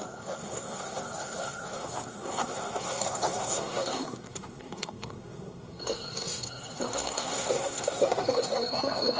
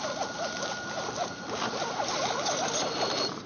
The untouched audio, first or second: second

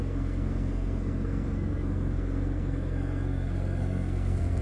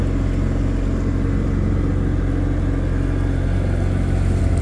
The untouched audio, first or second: second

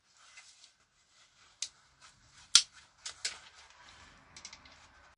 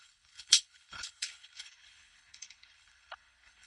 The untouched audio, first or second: first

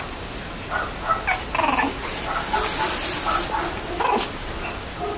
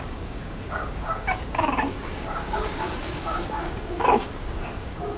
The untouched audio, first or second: first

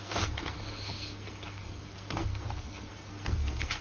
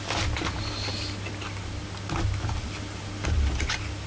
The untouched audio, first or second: second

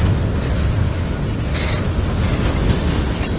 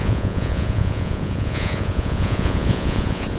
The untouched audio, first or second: first